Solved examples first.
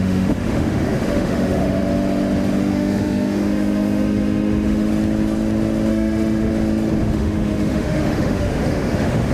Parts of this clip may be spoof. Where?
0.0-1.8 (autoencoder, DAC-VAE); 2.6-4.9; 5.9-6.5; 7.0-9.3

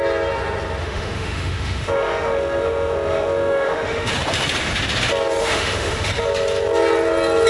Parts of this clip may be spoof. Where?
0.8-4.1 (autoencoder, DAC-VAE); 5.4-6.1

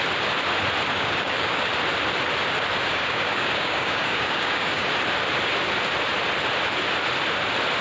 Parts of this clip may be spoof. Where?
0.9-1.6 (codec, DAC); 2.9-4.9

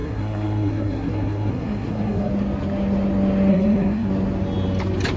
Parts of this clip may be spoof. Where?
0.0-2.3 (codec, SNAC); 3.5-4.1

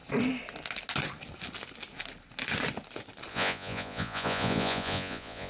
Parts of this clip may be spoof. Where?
3.3-5.5 (vocoder, Vocos)

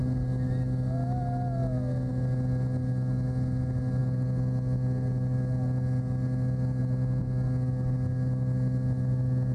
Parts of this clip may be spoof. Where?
none